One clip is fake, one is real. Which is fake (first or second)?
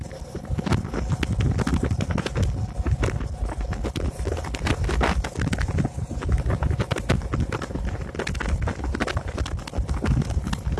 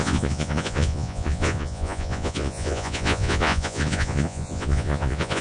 second